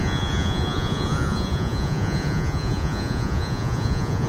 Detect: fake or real fake